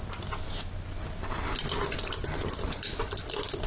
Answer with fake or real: real